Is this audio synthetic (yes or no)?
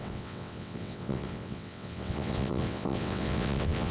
yes